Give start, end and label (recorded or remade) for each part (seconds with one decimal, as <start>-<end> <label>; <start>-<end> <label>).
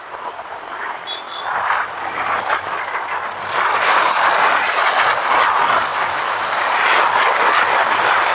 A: 0.0-8.3 recorded